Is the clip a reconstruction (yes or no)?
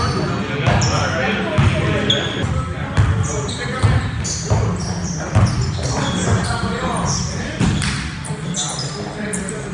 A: no